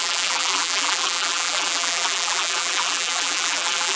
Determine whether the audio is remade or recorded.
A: remade